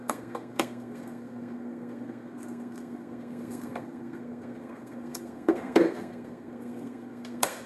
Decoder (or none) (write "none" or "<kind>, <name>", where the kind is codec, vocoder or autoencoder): codec, SNAC